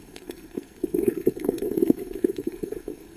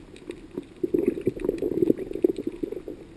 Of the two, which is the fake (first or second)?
first